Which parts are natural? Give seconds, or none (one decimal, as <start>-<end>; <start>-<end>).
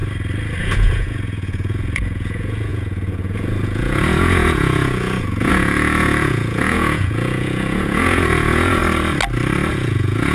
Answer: 0.0-0.6; 8.8-9.7